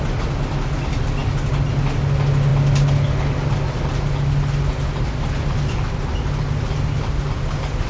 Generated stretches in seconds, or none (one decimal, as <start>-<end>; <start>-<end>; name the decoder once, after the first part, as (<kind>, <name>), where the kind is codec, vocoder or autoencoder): none